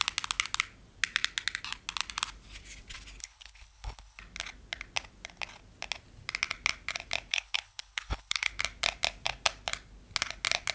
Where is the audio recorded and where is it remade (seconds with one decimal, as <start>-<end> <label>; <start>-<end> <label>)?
0.0-3.2 recorded; 3.2-4.2 remade; 4.2-7.3 recorded; 7.3-8.5 remade; 8.5-10.7 recorded